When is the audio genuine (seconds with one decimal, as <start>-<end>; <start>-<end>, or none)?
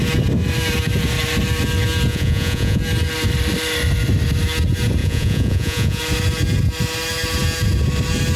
0.0-2.1; 2.8-5.0; 6.0-8.4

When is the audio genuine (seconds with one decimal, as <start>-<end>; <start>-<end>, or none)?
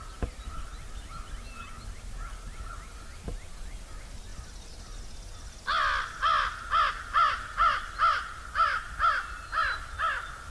0.0-10.5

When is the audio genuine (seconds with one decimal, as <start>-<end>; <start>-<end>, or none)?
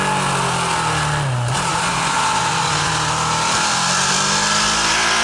0.0-1.7; 2.9-5.2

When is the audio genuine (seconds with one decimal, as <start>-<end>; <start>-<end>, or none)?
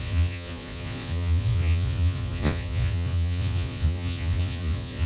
none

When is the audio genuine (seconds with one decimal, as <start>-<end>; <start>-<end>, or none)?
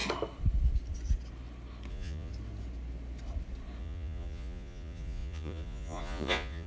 0.0-1.9; 2.3-3.8